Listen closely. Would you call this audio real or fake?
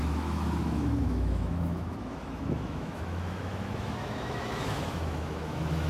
fake